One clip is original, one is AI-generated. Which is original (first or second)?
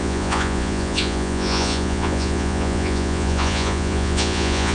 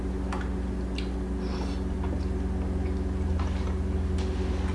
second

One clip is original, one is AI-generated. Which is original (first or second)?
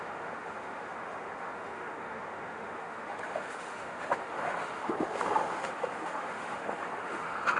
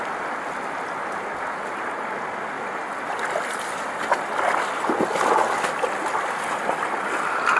second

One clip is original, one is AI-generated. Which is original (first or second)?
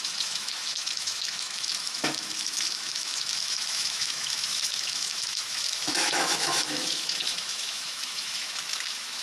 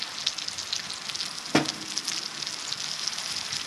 second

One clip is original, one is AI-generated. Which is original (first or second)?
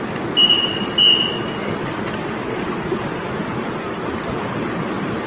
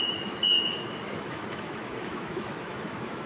first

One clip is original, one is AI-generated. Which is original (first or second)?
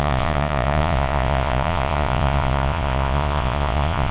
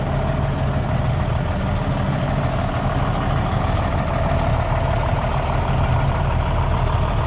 second